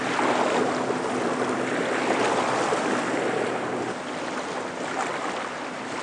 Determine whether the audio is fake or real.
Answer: real